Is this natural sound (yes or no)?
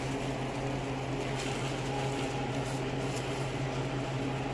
yes